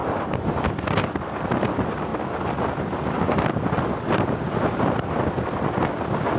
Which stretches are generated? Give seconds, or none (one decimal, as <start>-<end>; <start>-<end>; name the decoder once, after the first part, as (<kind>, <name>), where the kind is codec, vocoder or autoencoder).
0.0-0.6 (vocoder, BigVGAN v2)

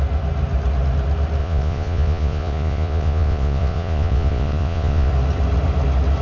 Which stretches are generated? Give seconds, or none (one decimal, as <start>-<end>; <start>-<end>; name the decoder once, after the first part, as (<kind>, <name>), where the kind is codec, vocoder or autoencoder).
1.4-5.1 (vocoder, Vocos)

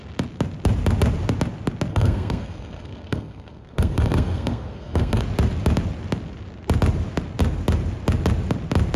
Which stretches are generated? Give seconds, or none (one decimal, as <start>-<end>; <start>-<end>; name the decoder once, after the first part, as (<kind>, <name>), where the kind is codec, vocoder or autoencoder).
1.9-5.2 (codec, SNAC)

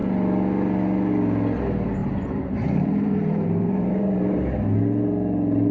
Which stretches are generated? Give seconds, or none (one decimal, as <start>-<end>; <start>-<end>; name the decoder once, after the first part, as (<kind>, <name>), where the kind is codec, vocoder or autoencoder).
2.0-4.5 (vocoder, BigVGAN v2)

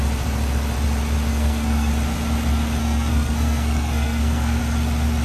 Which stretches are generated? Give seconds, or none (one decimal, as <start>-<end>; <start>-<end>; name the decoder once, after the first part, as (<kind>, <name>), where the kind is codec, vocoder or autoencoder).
1.3-1.9 (codec, SNAC); 2.8-4.6

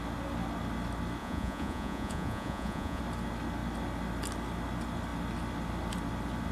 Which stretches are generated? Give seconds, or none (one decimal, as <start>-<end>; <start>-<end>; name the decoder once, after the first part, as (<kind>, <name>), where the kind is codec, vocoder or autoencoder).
1.2-3.0 (vocoder, Vocos)